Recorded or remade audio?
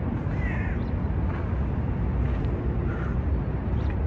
recorded